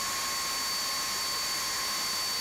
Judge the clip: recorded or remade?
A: recorded